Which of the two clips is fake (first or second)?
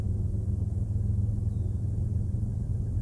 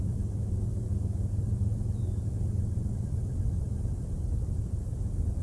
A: second